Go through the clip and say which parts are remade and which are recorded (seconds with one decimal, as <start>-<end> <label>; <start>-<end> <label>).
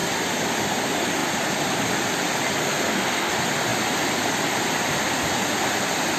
0.0-2.6 recorded; 2.6-3.3 remade; 3.3-6.2 recorded